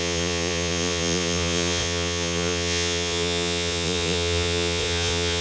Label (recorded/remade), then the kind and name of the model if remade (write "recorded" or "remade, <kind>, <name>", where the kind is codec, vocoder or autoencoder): remade, vocoder, Vocos